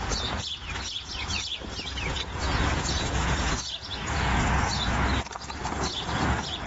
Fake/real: fake